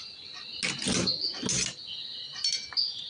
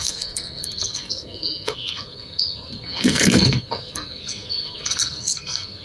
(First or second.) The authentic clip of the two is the first